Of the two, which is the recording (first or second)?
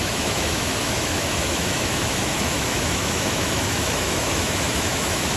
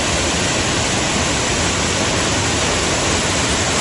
second